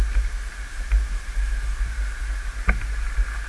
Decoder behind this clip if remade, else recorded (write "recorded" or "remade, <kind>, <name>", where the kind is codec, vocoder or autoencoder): recorded